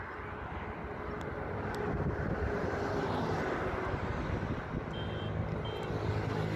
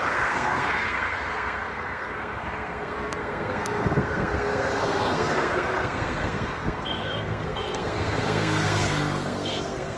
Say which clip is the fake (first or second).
second